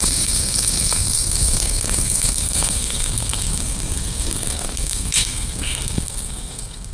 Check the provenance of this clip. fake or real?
fake